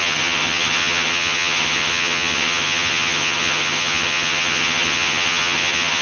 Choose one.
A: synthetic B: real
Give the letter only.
A